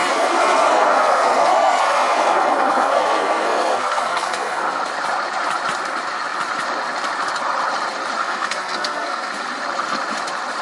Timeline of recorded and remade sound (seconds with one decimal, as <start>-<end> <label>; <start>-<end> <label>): 0.0-4.8 remade; 4.8-8.2 recorded; 8.2-9.3 remade; 9.3-10.6 recorded